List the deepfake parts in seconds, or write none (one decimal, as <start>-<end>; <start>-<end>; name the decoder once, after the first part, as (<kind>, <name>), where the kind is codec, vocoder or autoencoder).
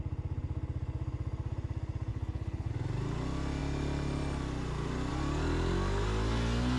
2.1-2.7 (codec, HILCodec)